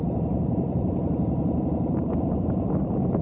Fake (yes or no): yes